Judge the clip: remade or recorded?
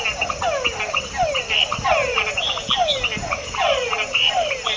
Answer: recorded